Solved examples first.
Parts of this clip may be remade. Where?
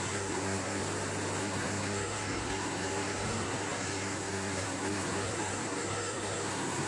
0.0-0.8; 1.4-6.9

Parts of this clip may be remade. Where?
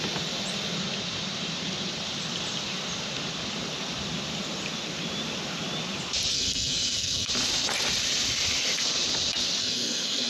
6.3-7.3; 9.6-10.3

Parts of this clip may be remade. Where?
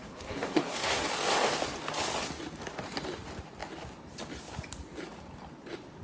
0.0-1.0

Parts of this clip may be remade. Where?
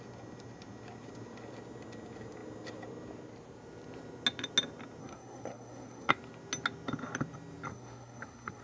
5.0-6.1; 7.7-8.6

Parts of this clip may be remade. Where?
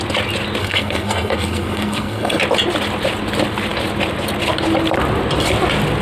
0.6-2.4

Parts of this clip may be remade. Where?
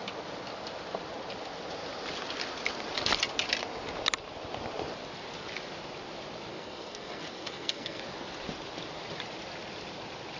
6.5-8.0